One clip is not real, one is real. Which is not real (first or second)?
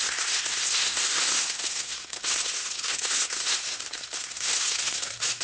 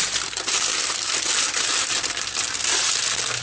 first